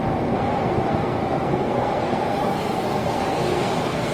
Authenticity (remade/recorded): remade